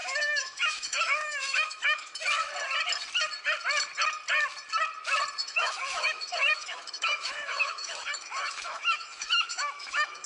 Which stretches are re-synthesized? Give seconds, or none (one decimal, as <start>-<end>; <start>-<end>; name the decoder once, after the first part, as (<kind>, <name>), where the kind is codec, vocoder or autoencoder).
0.0-2.5 (autoencoder, DAC-VAE); 5.4-10.3